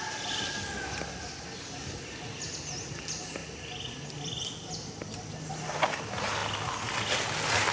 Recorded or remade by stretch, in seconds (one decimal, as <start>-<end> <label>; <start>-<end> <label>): 0.0-7.7 recorded